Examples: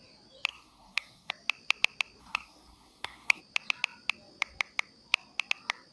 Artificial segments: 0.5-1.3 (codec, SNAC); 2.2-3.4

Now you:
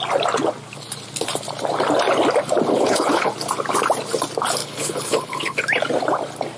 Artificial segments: 2.7-3.3 (codec, HILCodec); 4.6-5.6

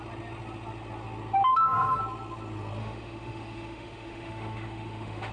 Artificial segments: 1.5-2.0 (autoencoder, DAC-VAE); 2.8-5.3

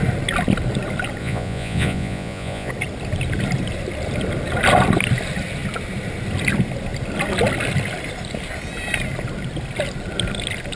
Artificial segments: 1.2-2.7 (vocoder, Vocos)

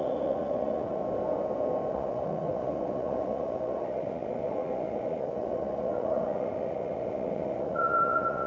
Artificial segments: 0.0-1.0 (vocoder, Vocos); 1.9-8.5

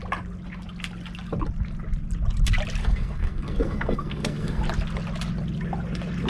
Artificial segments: 2.8-4.6 (codec, SNAC)

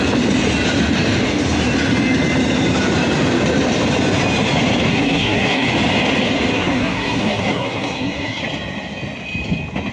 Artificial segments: 4.9-5.7 (codec, SNAC); 6.5-8.4